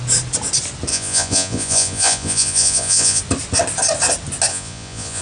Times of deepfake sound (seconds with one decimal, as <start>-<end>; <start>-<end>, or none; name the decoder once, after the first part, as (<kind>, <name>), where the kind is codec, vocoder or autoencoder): 0.9-3.2 (vocoder, Vocos); 4.5-5.2